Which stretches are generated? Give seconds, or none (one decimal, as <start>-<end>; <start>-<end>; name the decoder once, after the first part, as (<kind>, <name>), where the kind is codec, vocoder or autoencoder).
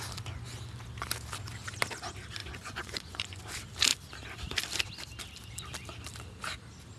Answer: 2.4-3.4 (vocoder, Vocos)